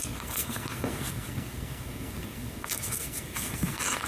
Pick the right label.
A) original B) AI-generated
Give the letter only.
B